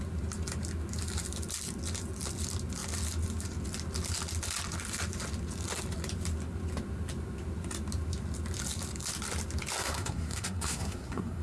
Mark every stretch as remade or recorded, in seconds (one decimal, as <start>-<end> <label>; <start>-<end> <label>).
0.0-9.8 recorded; 9.8-11.4 remade